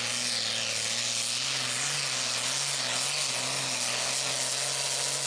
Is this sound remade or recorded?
recorded